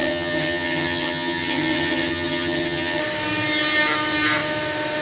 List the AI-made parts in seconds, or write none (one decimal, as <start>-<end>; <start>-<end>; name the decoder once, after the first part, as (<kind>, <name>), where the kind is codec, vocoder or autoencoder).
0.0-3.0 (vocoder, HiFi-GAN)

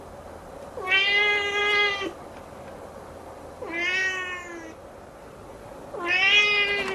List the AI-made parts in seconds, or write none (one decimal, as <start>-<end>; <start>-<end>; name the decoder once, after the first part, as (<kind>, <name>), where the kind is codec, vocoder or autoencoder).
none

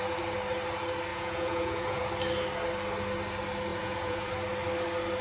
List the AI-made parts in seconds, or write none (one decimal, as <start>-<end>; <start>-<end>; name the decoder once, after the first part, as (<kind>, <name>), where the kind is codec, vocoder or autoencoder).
1.1-2.0 (vocoder, Vocos); 3.7-4.3

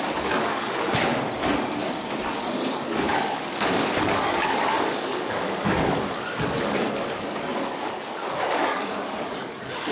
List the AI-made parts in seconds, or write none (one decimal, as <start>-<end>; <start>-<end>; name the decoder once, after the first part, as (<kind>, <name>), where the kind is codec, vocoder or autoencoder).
0.0-1.1 (codec, DAC); 2.3-9.9